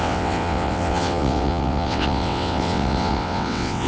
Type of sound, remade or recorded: remade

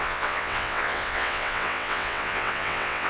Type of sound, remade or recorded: remade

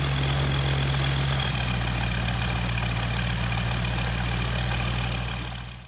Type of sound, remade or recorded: recorded